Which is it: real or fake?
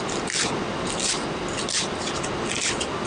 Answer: real